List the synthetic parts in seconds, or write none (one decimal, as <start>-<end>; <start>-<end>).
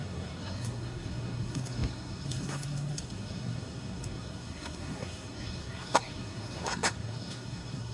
0.0-7.9